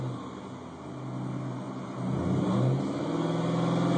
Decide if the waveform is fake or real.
real